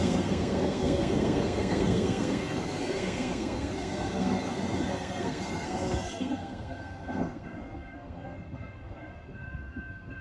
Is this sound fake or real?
fake